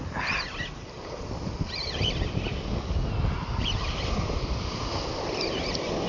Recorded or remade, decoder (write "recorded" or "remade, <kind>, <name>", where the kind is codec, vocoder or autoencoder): recorded